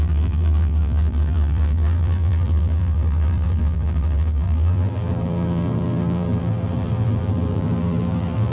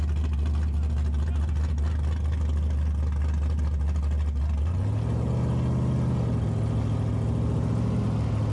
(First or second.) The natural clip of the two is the second